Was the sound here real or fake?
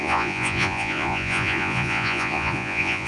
fake